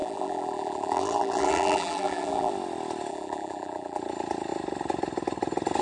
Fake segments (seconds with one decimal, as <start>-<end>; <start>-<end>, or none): 0.0-2.5; 3.1-4.0

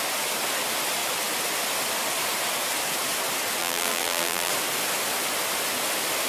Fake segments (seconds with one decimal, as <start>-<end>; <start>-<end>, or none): 3.6-4.5